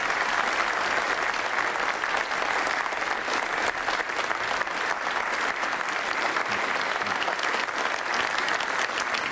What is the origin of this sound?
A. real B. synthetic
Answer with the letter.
A